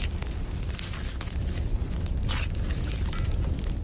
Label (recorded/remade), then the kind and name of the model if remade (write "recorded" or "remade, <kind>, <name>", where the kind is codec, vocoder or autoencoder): recorded